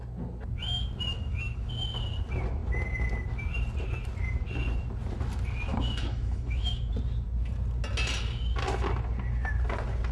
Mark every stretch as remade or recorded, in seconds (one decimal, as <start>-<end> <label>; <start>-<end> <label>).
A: 0.0-1.1 recorded; 1.1-1.7 remade; 1.7-5.7 recorded; 5.7-6.9 remade; 6.9-10.1 recorded